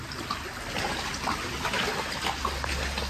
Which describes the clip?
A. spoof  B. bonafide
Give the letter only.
B